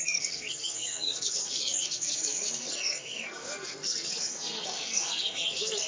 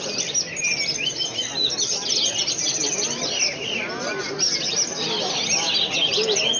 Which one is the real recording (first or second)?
second